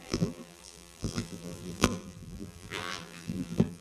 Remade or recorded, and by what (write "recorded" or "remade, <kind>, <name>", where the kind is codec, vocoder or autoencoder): remade, vocoder, BigVGAN v2